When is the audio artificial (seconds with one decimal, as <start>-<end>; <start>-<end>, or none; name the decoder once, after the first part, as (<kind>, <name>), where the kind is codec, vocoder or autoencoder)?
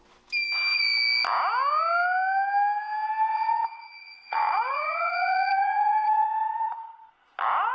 3.3-7.1 (vocoder, Vocos)